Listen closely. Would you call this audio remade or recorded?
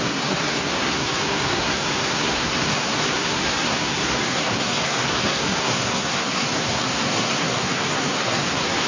remade